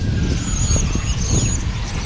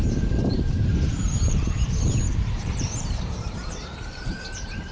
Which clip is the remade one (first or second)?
second